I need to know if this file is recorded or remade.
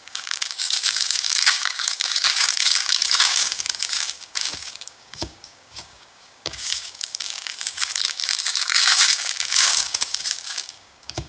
remade